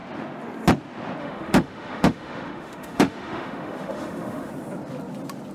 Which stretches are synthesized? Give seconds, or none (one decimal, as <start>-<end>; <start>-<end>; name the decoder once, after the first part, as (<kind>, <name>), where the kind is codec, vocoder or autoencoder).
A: 1.2-4.5 (autoencoder, DAC-VAE)